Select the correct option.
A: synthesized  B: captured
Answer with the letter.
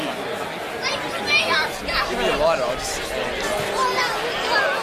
B